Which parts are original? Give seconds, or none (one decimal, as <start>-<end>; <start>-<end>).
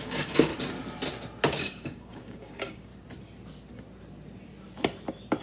0.5-1.6; 2.9-5.4